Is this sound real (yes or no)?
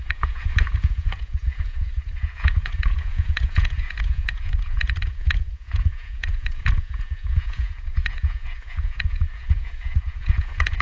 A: no